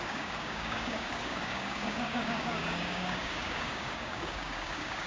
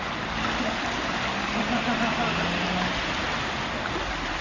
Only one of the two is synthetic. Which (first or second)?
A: first